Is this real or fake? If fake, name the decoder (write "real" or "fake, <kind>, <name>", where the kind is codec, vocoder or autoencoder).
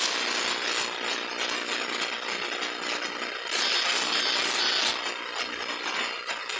real